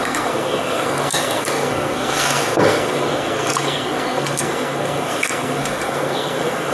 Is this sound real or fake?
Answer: fake